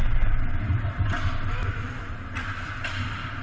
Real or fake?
fake